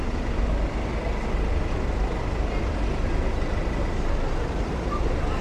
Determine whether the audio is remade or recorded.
recorded